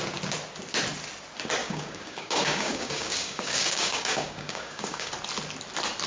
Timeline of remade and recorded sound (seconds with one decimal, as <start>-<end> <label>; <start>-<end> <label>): 0.0-1.6 recorded; 1.6-5.1 remade; 5.1-6.1 recorded